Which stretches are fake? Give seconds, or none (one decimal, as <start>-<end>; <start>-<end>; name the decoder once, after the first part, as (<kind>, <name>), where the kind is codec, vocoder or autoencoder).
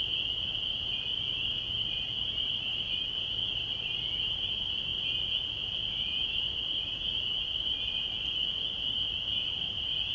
none